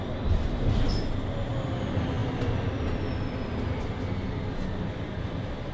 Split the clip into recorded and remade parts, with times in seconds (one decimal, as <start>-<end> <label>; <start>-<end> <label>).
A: 0.0-5.7 recorded